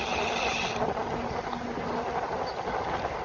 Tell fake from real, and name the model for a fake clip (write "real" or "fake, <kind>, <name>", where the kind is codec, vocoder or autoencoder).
real